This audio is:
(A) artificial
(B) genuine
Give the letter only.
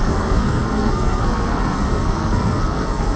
A